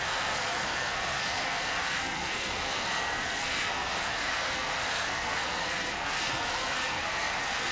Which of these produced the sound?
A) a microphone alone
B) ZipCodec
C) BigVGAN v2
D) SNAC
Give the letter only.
D